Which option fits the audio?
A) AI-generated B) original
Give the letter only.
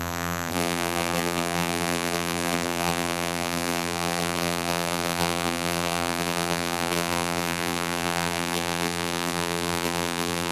A